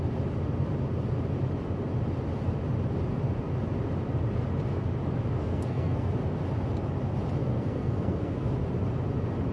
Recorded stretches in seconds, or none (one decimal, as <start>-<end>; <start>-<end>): 0.0-5.4; 6.1-7.4; 8.5-9.5